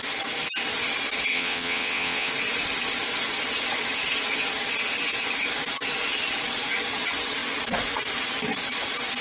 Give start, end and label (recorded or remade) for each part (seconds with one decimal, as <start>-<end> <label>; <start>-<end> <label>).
0.0-1.3 recorded; 1.3-2.3 remade; 2.3-9.2 recorded

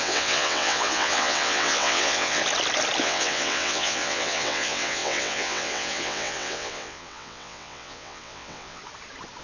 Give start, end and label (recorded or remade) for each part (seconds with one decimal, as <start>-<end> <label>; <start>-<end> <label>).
0.0-2.4 remade; 2.4-3.0 recorded; 3.0-8.8 remade; 8.8-9.4 recorded